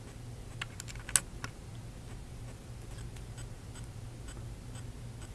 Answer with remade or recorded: recorded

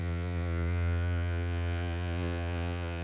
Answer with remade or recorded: remade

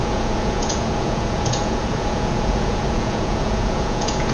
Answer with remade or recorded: remade